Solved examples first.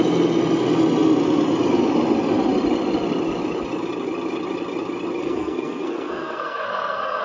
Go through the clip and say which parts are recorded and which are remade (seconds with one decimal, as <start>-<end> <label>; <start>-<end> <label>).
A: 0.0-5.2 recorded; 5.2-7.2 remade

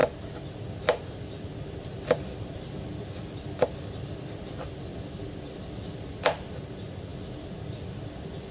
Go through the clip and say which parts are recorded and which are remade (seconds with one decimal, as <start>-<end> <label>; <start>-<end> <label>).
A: 0.0-8.5 recorded

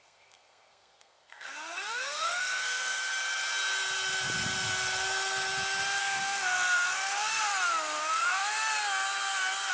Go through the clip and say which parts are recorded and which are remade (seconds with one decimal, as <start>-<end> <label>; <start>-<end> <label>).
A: 0.0-3.0 remade; 3.0-6.0 recorded; 6.0-7.5 remade; 7.5-8.0 recorded; 8.0-8.4 remade; 8.4-9.7 recorded

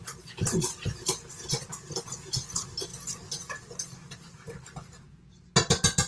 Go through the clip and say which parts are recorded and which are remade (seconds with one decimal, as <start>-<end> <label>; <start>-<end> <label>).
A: 0.0-6.1 recorded

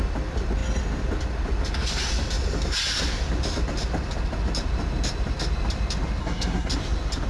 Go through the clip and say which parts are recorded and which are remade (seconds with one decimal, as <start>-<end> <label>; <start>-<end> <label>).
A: 0.0-6.2 recorded; 6.2-6.7 remade; 6.7-7.3 recorded

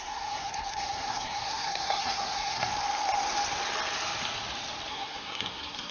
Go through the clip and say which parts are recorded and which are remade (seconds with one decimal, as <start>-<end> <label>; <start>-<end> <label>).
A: 0.0-2.7 remade; 2.7-4.9 recorded; 4.9-5.9 remade

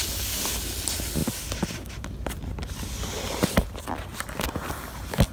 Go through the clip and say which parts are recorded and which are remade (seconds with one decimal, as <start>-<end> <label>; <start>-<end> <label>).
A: 0.0-5.3 recorded

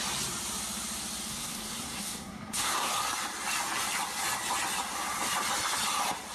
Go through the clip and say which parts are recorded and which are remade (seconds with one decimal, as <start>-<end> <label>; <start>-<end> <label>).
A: 0.0-1.3 recorded; 1.3-2.9 remade; 2.9-6.3 recorded